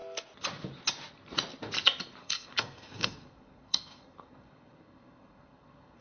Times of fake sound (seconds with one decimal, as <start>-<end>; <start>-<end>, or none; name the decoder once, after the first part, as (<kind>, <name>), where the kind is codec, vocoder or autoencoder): 2.2-6.0 (codec, SNAC)